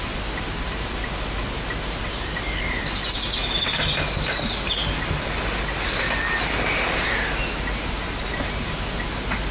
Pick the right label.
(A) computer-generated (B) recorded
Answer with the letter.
B